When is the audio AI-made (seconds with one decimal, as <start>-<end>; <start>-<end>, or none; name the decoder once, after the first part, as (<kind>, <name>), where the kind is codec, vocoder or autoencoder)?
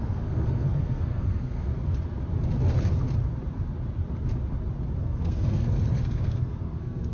0.0-1.7 (codec, SNAC); 5.0-7.1